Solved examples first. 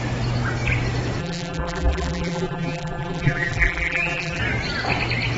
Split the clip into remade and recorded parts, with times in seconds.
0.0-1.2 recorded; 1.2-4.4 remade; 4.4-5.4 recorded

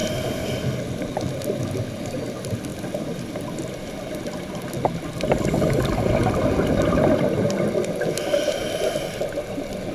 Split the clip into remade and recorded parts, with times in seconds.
0.0-2.7 recorded; 2.7-4.7 remade; 4.7-9.9 recorded

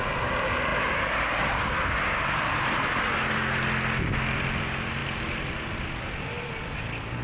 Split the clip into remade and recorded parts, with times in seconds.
0.0-7.2 recorded

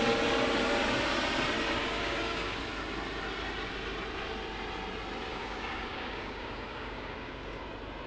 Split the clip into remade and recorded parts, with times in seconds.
0.0-1.8 recorded; 1.8-2.6 remade; 2.6-5.3 recorded; 5.3-7.6 remade; 7.6-8.1 recorded

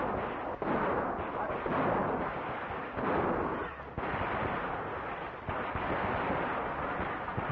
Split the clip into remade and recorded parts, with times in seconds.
0.0-7.5 recorded

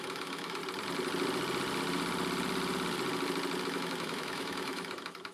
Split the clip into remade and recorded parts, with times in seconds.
0.0-0.6 remade; 0.6-3.6 recorded; 3.6-5.3 remade

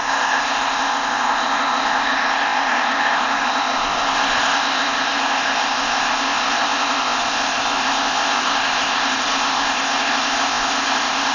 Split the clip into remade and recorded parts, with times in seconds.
0.0-11.3 remade